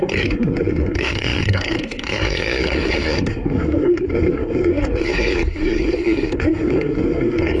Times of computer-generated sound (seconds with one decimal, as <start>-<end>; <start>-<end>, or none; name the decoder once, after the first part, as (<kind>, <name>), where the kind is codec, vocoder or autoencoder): 0.0-7.6 (codec, SNAC)